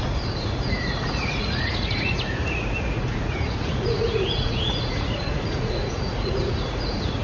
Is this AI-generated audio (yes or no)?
yes